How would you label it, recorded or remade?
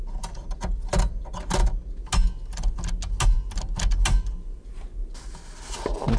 recorded